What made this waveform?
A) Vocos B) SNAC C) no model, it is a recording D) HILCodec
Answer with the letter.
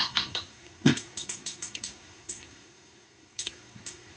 B